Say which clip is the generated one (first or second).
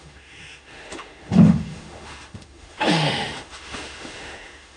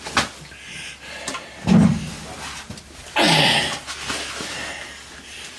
first